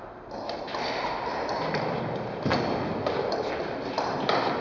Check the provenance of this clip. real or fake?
real